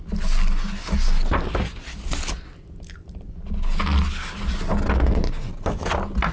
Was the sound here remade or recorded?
recorded